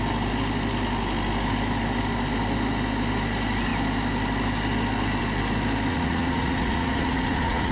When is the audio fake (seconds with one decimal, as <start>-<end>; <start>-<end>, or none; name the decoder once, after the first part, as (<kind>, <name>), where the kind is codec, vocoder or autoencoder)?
5.9-7.7 (vocoder, Vocos)